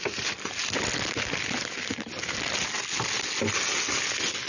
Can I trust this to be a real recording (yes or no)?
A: yes